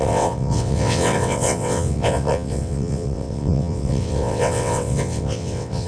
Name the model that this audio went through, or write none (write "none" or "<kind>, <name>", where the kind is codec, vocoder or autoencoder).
vocoder, WaveNeXt